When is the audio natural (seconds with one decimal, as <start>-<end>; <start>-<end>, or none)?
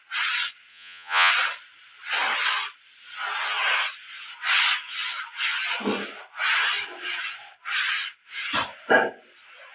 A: 0.0-0.7; 1.3-9.7